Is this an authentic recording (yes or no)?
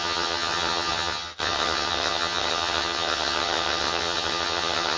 no